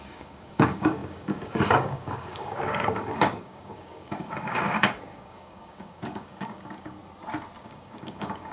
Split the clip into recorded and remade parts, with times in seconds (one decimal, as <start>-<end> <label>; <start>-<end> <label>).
0.0-7.0 remade; 7.0-7.6 recorded; 7.6-8.5 remade